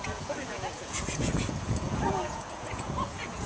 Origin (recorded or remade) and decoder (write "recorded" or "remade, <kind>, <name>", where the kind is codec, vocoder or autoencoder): remade, vocoder, Vocos